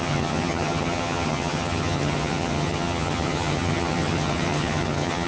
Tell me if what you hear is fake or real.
fake